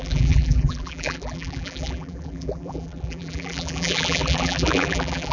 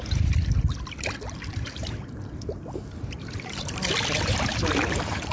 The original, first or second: second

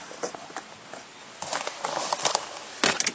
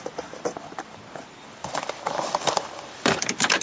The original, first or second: first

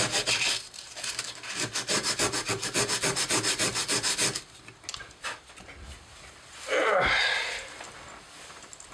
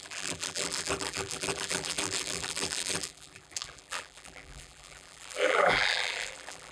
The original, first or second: first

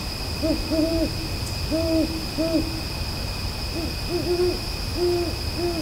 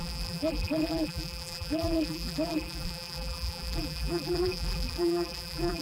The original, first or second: first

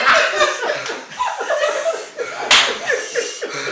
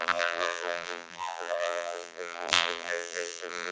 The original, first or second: first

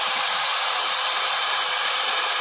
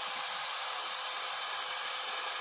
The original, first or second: second